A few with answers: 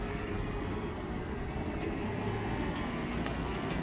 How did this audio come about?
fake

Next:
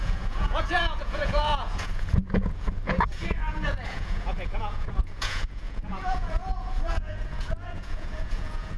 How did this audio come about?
fake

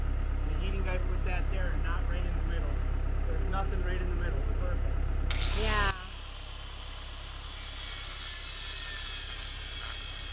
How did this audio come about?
real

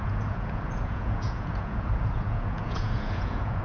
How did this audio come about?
fake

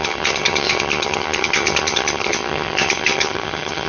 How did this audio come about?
fake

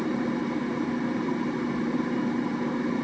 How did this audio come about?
real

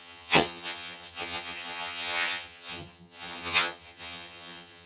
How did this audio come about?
fake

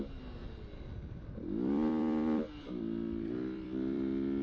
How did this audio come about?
fake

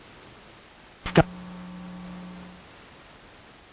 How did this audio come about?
real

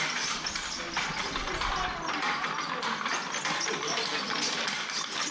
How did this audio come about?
real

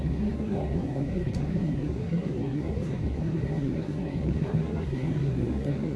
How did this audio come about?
fake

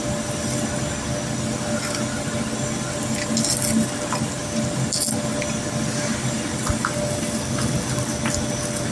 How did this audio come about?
real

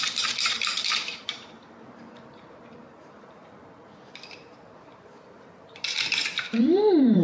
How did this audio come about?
fake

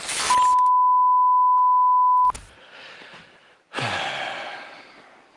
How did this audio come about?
real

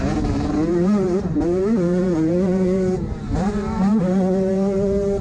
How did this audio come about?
fake